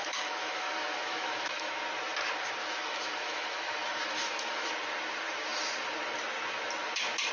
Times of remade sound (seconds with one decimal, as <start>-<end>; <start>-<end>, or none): 0.0-1.7; 2.6-4.7